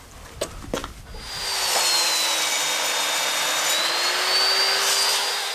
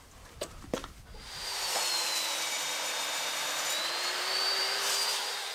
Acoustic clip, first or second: first